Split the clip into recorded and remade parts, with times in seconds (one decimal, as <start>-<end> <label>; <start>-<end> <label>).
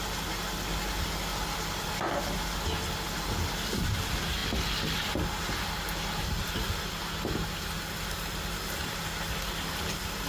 0.0-10.3 recorded